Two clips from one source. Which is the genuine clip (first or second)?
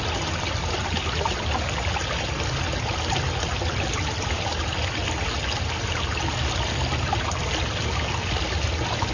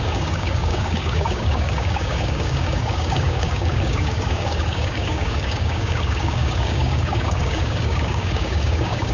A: first